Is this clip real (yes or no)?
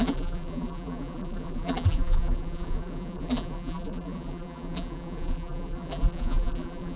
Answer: no